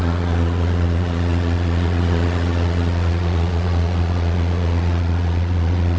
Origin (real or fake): fake